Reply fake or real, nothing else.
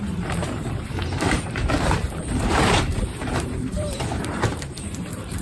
fake